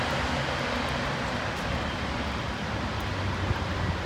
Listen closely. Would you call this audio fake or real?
real